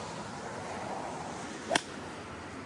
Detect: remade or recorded recorded